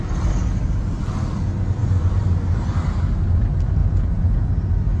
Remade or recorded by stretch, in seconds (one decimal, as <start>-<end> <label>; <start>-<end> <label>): 0.0-3.8 recorded; 3.8-4.5 remade; 4.5-5.0 recorded